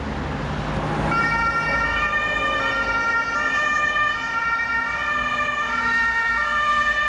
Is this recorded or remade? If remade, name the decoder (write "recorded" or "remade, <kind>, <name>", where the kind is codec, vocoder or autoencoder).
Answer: recorded